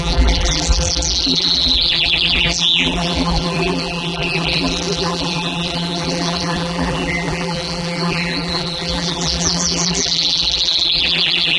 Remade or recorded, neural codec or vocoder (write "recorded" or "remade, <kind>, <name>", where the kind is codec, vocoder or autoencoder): remade, vocoder, BigVGAN v2